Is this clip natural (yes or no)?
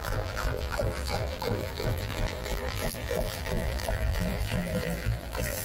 no